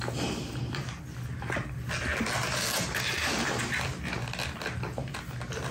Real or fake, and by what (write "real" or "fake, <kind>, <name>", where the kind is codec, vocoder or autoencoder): real